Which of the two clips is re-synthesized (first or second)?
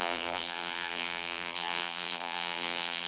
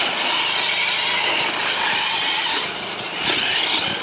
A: first